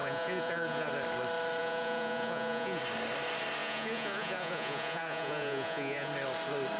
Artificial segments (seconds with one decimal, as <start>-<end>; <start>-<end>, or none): 0.0-0.9; 1.6-2.8; 3.6-6.1